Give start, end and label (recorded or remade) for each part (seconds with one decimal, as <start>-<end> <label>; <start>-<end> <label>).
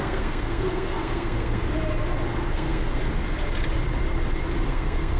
0.0-1.6 remade; 1.6-2.5 recorded; 2.5-3.0 remade; 3.0-4.7 recorded; 4.7-5.2 remade